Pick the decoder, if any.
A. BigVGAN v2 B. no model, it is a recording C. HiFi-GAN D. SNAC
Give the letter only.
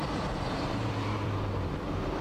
A